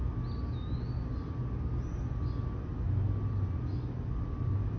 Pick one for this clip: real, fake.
real